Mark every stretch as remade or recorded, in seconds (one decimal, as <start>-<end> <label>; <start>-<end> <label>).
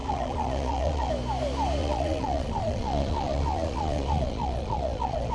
0.0-1.1 remade; 1.1-1.8 recorded; 1.8-5.3 remade